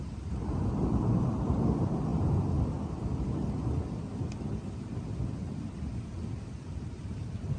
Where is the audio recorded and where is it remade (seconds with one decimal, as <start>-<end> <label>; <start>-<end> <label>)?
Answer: 0.0-2.1 remade; 2.1-6.7 recorded; 6.7-7.6 remade